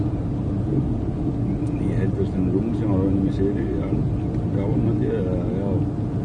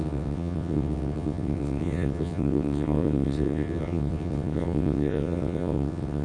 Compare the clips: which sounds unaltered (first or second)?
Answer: first